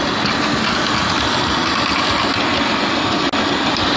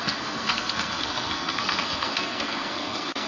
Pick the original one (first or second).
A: first